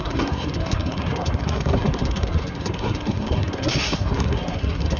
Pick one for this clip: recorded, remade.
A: remade